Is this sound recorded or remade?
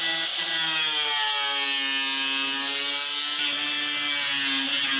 recorded